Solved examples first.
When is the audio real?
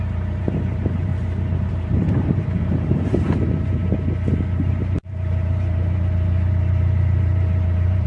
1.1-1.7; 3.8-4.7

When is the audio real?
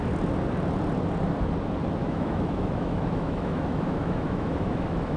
0.0-2.0